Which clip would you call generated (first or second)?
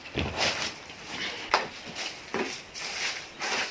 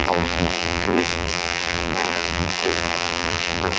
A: second